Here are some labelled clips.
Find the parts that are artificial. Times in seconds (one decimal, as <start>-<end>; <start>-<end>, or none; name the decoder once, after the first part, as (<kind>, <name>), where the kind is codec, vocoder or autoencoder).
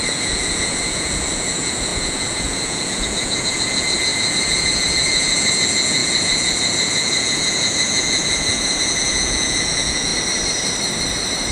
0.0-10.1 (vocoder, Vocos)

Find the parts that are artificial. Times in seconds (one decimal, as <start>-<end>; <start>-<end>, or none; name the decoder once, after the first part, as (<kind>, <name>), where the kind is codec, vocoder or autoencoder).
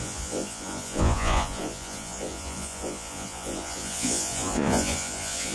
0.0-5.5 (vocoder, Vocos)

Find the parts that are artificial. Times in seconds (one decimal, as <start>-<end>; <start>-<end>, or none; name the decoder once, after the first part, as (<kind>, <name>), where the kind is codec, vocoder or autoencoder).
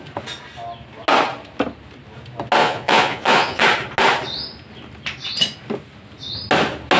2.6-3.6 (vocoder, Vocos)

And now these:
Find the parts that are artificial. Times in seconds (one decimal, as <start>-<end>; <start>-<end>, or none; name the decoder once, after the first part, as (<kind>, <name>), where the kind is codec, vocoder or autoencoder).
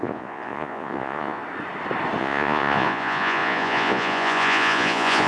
0.0-1.4 (vocoder, Vocos); 2.2-5.3